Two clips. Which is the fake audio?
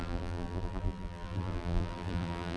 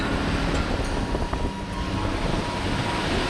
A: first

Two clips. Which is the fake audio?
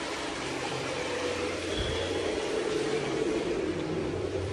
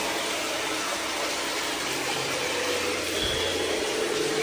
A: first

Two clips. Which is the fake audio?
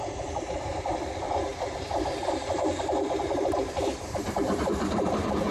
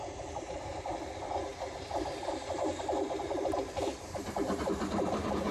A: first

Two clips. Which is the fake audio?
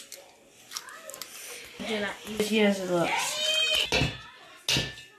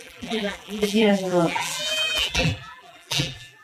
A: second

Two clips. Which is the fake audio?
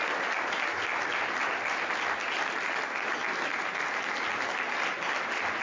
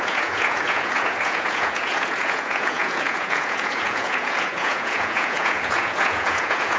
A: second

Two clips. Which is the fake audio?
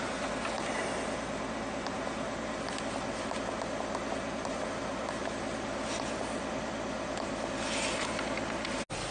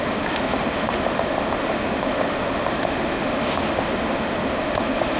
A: second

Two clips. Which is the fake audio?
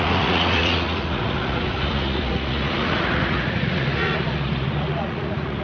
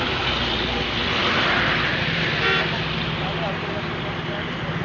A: first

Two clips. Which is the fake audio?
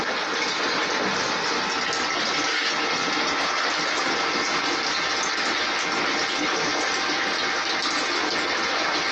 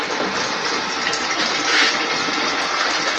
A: second